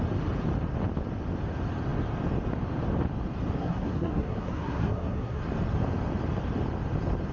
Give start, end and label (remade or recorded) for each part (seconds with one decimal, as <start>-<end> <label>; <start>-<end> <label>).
0.0-3.6 recorded; 3.6-5.4 remade; 5.4-7.3 recorded